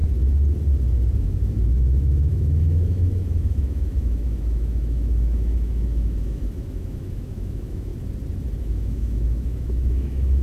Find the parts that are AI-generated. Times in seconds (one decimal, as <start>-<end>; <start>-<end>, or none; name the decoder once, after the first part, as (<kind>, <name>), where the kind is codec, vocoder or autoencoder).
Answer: 1.2-7.9 (autoencoder, DAC-VAE); 8.6-10.4